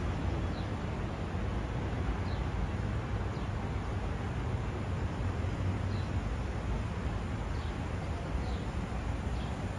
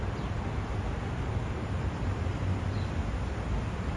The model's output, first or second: second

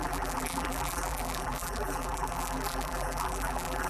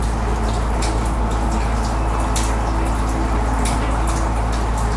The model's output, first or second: first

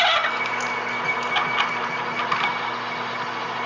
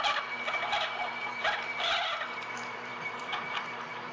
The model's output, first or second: second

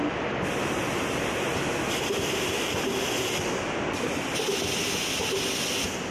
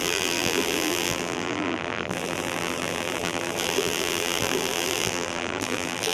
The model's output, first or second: second